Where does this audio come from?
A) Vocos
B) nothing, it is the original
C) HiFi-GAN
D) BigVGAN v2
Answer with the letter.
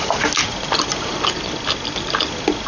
B